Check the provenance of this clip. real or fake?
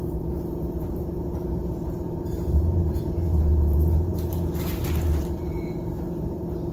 fake